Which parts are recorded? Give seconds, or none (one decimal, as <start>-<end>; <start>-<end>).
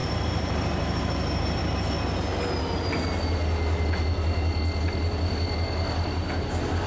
1.6-6.9